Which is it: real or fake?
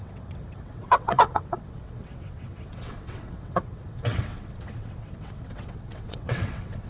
fake